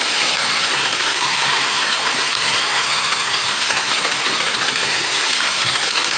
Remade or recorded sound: remade